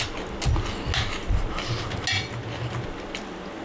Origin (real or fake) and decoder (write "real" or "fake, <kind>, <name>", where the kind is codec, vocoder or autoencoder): real